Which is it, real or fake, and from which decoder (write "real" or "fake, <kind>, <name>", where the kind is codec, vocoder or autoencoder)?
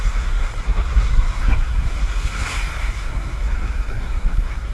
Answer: fake, codec, SNAC